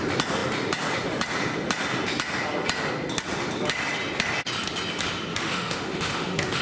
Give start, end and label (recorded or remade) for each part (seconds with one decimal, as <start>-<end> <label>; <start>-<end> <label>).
0.0-5.3 recorded; 5.3-6.6 remade